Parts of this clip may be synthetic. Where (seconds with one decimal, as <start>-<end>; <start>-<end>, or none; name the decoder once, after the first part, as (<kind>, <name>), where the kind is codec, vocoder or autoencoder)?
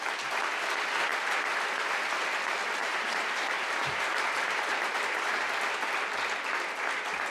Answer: 2.8-5.5 (vocoder, BigVGAN v2)